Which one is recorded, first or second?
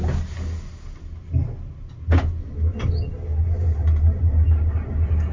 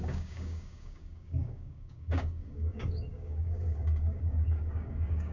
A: first